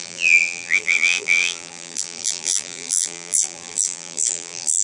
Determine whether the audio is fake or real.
fake